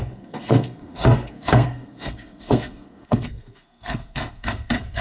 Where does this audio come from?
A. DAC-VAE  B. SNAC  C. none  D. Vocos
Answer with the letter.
B